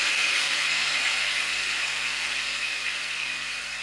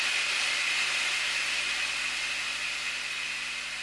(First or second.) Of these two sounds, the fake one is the first